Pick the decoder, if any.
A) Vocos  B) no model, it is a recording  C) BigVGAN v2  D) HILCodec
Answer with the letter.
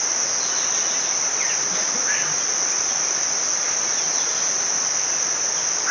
B